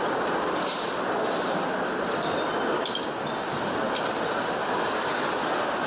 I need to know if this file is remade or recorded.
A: recorded